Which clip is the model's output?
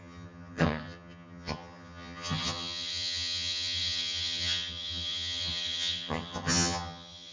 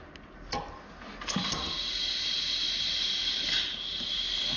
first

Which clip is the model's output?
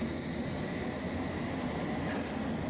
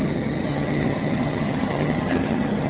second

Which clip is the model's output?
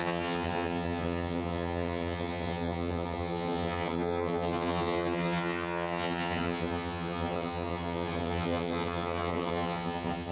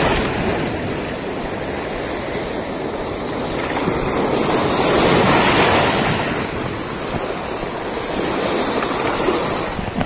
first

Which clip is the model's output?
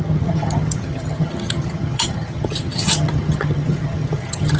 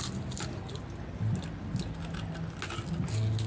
first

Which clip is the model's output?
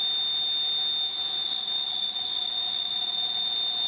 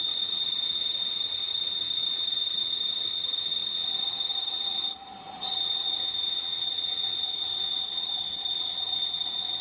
second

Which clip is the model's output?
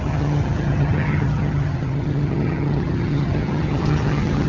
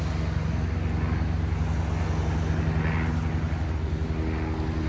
first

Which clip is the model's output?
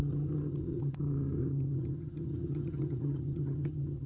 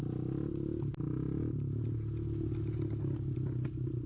first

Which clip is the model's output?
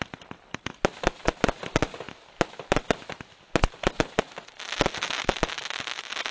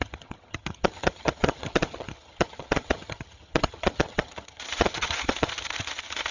second